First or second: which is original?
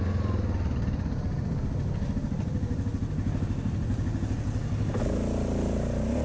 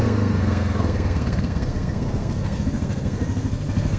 first